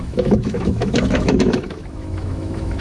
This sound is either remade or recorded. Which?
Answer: remade